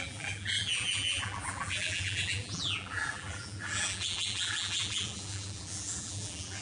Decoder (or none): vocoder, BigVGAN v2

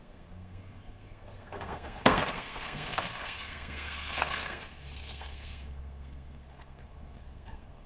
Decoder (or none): codec, SNAC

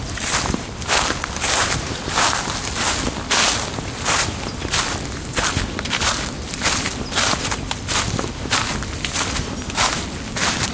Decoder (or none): none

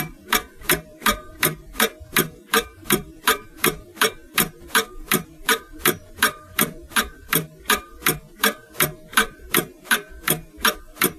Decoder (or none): vocoder, BigVGAN v2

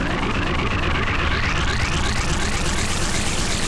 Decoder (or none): none